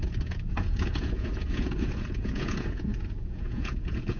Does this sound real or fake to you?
fake